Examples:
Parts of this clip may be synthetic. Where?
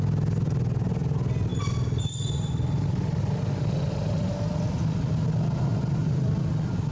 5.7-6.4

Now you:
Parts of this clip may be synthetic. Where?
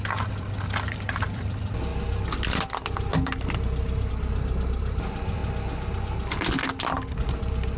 0.0-1.9; 4.1-5.4; 7.3-7.8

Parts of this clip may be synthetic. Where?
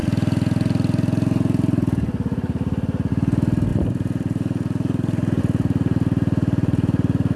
3.7-5.4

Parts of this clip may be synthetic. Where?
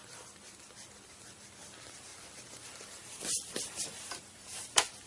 0.0-5.1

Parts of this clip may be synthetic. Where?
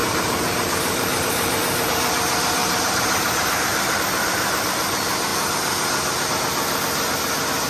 0.0-1.9; 2.6-4.0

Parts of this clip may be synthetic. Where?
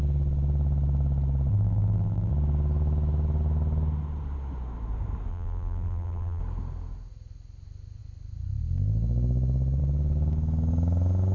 1.5-2.3; 5.3-6.4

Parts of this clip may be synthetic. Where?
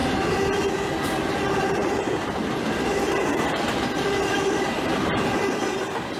1.8-5.0